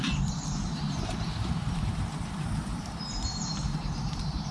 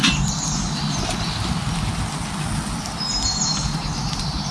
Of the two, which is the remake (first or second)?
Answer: first